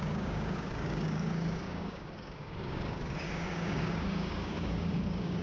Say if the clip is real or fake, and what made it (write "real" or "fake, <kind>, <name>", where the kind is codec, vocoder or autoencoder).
fake, codec, DAC